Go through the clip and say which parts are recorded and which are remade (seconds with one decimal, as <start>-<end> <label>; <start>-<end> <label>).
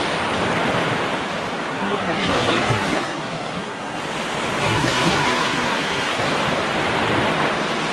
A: 0.0-1.7 recorded; 1.7-4.0 remade; 4.0-4.6 recorded; 4.6-6.3 remade; 6.3-7.9 recorded